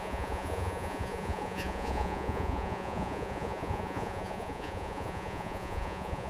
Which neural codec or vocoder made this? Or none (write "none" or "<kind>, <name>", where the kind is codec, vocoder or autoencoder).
vocoder, Vocos